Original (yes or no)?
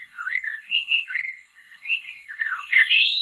no